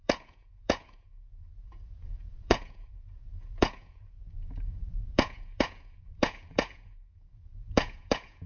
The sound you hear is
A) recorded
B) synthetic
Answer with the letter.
B